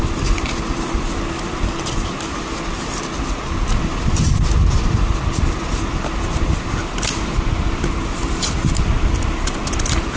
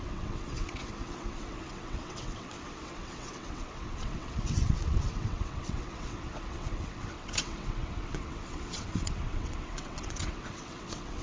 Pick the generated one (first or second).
second